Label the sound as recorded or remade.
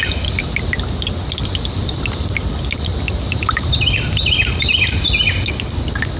recorded